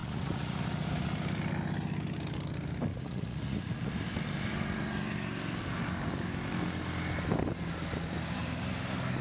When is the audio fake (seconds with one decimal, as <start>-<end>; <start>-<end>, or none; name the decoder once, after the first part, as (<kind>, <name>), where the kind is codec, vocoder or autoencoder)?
0.0-0.6 (vocoder, Vocos); 2.9-3.9